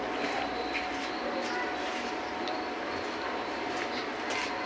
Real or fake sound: real